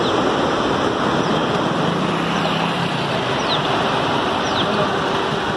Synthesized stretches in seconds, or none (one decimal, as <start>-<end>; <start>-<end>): none